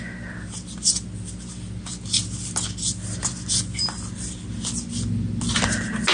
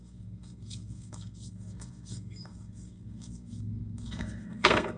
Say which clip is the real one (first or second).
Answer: first